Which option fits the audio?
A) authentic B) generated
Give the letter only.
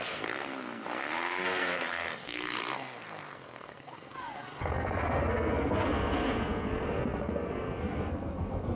B